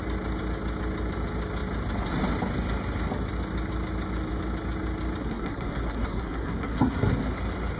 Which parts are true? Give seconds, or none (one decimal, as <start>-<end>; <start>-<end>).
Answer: 0.0-5.2; 7.2-7.8